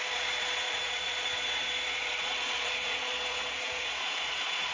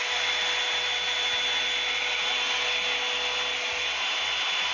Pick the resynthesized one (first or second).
first